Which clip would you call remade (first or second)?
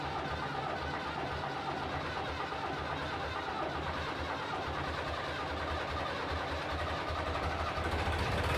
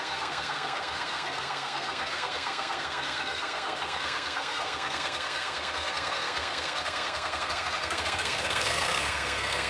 second